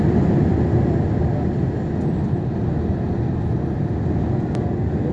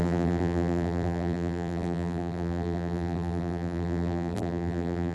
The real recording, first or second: first